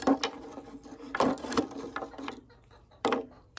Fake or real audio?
real